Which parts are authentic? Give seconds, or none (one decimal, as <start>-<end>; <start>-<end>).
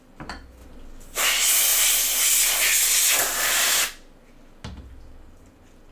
0.0-5.9